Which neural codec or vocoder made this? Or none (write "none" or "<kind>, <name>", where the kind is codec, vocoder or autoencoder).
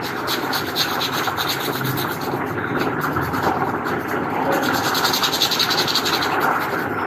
none